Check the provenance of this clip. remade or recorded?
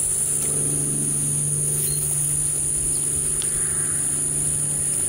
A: recorded